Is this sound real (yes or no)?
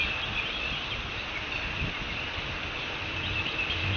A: yes